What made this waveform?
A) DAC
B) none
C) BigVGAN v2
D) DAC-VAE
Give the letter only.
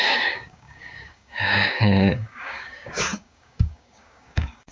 A